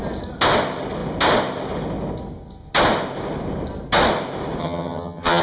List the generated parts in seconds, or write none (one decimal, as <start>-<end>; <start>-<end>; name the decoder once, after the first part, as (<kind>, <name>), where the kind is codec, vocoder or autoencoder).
4.6-5.4 (vocoder, HiFi-GAN)